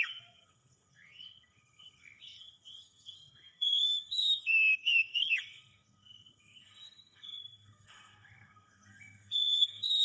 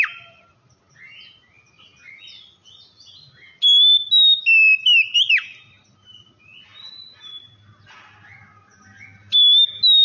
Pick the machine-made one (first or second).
first